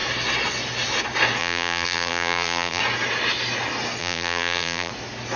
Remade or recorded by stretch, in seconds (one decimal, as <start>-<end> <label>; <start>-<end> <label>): 0.0-1.4 recorded; 1.4-2.8 remade; 2.8-4.0 recorded; 4.0-4.9 remade; 4.9-5.4 recorded